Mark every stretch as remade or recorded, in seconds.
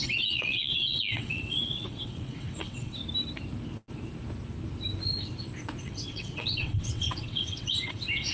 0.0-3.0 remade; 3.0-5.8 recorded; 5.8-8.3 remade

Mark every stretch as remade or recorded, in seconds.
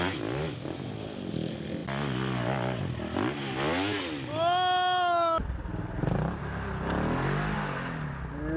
0.0-8.6 recorded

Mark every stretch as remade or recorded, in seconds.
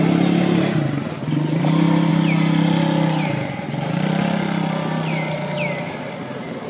0.0-6.7 recorded